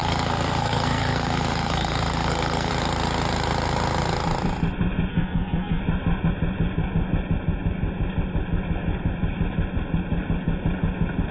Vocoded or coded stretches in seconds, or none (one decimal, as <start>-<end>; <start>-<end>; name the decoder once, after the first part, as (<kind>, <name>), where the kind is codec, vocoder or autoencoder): 0.0-2.7 (codec, SNAC); 5.1-5.8